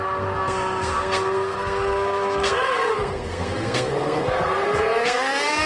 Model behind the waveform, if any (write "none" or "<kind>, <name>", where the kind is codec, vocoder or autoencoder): codec, SNAC